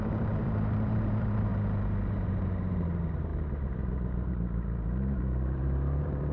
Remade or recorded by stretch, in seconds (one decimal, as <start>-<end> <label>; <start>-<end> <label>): 0.0-1.5 remade; 1.5-2.1 recorded; 2.1-6.3 remade